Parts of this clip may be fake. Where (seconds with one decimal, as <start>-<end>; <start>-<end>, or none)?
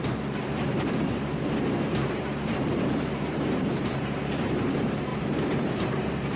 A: 0.0-6.4